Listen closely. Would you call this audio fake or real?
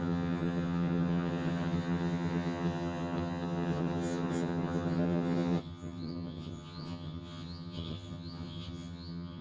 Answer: fake